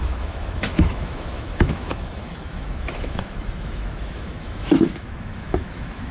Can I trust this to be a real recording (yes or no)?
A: no